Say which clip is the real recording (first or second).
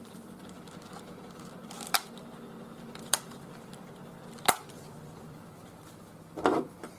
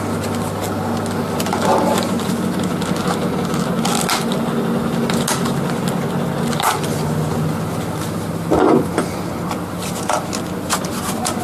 second